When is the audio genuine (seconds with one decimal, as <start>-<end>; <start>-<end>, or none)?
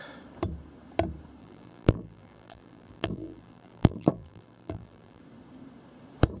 0.0-1.4; 5.2-6.4